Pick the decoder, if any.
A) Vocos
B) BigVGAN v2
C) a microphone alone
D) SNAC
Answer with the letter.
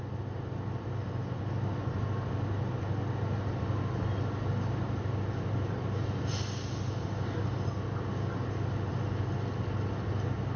C